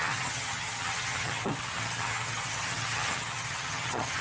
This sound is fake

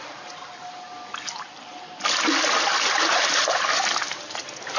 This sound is real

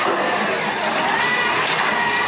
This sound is real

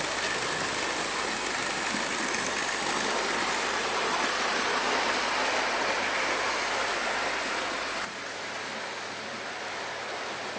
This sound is real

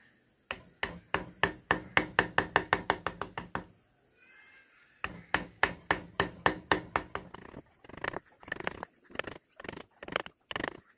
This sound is real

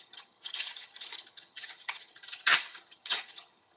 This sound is fake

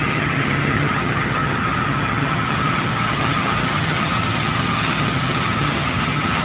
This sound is fake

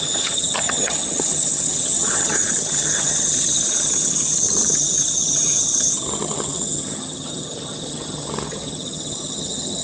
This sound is fake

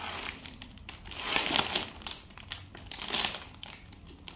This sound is real